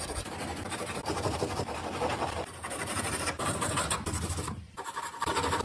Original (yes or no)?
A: no